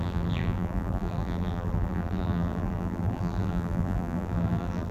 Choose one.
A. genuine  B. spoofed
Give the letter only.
B